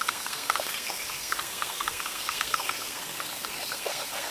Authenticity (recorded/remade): remade